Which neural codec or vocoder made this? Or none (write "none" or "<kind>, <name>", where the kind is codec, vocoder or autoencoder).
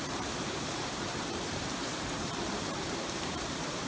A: vocoder, BigVGAN v2